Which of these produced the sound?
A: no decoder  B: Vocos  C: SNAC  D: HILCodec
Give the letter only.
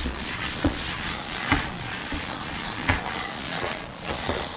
B